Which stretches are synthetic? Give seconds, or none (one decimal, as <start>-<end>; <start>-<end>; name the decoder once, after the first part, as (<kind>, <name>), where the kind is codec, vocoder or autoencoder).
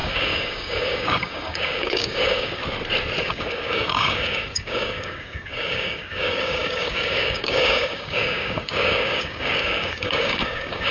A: 0.0-2.6 (codec, DAC); 3.2-10.9